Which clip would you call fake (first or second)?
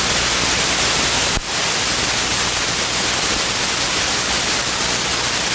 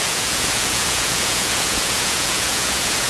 second